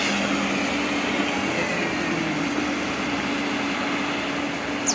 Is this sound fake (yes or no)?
no